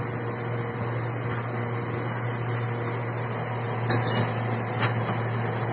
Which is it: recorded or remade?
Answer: recorded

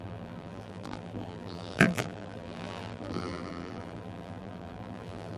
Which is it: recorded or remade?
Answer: remade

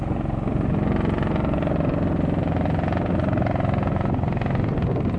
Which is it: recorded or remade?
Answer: recorded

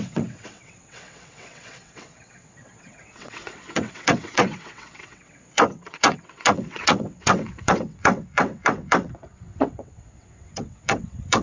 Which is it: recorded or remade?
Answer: remade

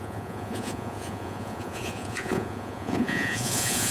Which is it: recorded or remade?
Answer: remade